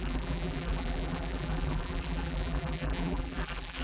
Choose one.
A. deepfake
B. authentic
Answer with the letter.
A